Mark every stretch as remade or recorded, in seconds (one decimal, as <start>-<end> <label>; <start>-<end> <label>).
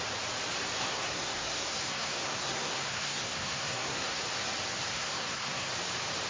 0.0-0.8 recorded; 0.8-4.2 remade; 4.2-4.9 recorded; 4.9-5.7 remade; 5.7-6.3 recorded